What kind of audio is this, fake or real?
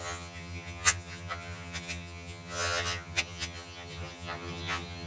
fake